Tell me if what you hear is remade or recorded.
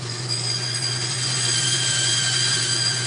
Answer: remade